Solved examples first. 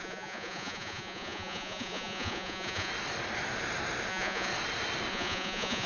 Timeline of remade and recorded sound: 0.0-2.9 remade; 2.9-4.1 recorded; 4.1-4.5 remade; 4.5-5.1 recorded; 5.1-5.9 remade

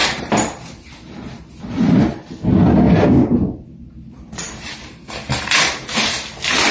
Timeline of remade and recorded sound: 0.0-2.2 remade; 2.2-3.3 recorded; 3.3-6.3 remade; 6.3-6.7 recorded

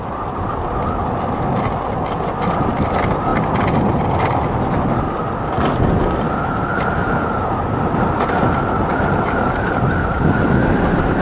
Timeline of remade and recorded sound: 0.0-11.2 recorded

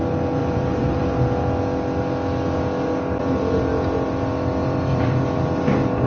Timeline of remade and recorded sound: 0.0-0.4 recorded; 0.4-1.0 remade; 1.0-4.6 recorded; 4.6-5.2 remade; 5.2-6.1 recorded